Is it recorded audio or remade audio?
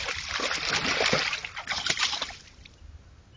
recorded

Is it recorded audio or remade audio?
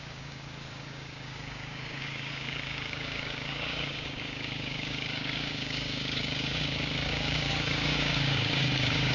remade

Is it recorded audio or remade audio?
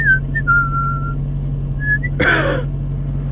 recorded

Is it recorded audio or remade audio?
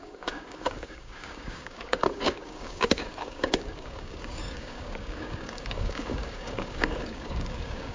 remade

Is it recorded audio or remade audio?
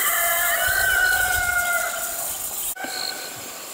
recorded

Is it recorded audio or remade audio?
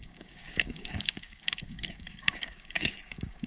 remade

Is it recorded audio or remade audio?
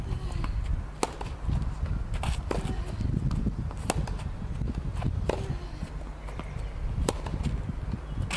recorded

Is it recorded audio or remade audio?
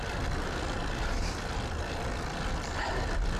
recorded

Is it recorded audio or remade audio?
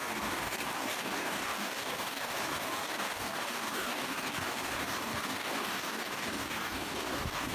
remade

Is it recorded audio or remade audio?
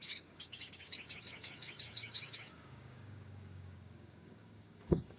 remade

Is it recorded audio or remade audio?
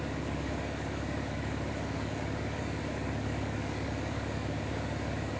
remade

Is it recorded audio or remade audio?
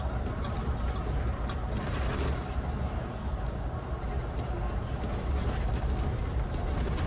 recorded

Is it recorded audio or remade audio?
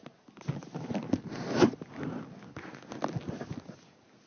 recorded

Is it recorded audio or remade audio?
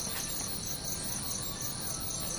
recorded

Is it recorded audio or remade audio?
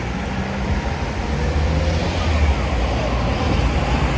recorded